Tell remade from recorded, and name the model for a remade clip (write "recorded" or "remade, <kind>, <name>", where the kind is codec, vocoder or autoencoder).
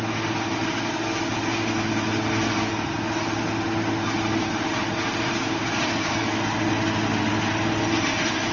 recorded